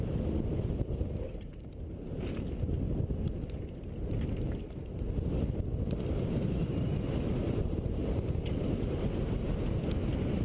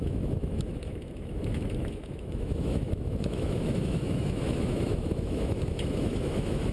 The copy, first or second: second